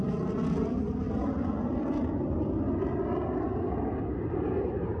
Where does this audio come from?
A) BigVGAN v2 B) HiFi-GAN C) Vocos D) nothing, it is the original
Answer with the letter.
D